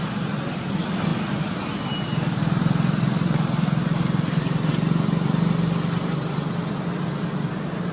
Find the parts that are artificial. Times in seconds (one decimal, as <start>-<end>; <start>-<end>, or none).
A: 1.1-4.7